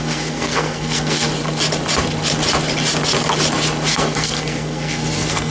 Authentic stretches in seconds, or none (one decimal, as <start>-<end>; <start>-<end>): 1.3-3.9